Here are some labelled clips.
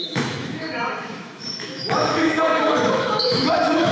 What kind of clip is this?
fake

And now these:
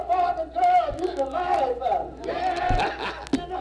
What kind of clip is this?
real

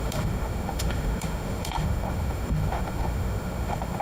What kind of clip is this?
fake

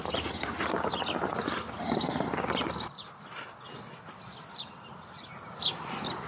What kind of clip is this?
real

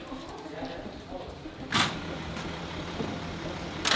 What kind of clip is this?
fake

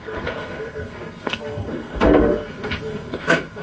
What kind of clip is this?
fake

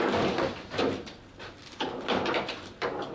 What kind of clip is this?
real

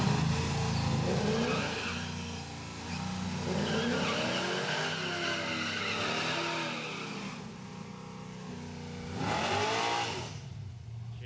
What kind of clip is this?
real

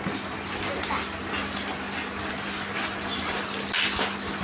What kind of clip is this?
real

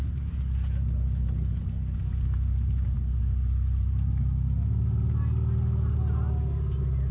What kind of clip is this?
real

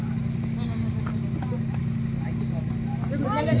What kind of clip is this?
real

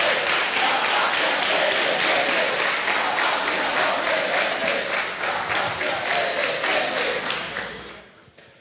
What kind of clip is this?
real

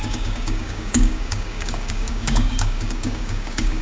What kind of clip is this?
fake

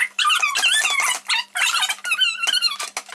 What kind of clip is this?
real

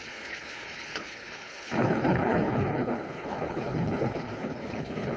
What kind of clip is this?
fake